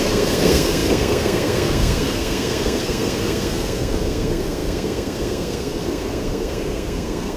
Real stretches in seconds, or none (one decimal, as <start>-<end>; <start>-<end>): none